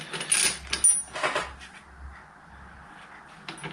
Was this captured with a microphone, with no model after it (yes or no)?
yes